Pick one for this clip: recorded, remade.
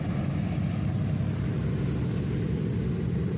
recorded